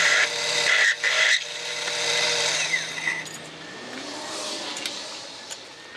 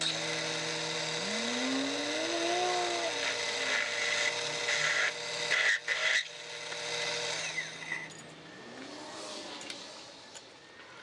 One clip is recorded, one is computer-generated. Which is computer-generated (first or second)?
first